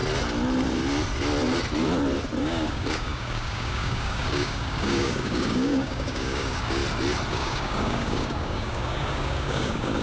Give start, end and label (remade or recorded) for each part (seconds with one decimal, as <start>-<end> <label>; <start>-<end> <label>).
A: 0.0-2.4 recorded; 2.4-6.8 remade; 6.8-7.3 recorded; 7.3-10.0 remade